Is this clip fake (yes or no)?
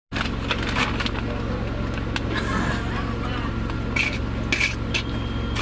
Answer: no